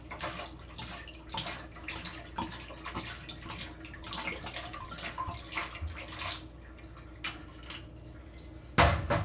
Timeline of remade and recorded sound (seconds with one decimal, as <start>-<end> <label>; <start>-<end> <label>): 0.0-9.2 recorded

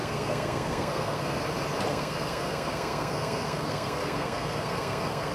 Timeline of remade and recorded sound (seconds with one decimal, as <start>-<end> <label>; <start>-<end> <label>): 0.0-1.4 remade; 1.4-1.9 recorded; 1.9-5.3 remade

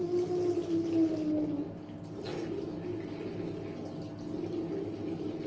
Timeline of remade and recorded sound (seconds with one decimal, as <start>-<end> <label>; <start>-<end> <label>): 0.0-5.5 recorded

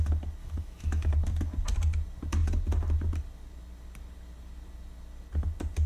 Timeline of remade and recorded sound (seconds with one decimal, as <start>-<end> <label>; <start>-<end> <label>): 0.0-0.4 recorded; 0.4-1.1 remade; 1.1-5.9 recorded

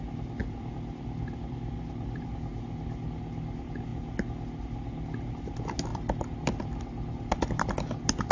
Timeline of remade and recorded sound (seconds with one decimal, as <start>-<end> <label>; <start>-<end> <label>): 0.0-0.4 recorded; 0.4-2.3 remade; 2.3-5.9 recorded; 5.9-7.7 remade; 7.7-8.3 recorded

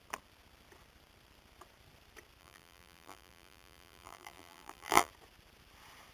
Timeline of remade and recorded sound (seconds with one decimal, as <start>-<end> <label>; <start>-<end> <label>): 0.0-2.4 recorded; 2.4-5.1 remade; 5.1-6.1 recorded